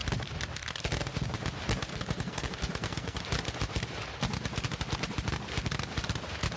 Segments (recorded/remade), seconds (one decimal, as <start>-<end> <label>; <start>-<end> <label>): 0.0-1.9 recorded; 1.9-3.2 remade; 3.2-6.6 recorded